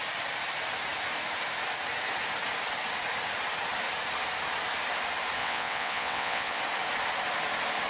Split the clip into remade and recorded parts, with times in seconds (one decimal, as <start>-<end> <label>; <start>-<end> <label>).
0.0-5.4 recorded; 5.4-6.6 remade; 6.6-7.9 recorded